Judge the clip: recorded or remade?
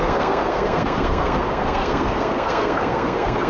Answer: remade